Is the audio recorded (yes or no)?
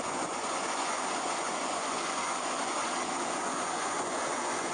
no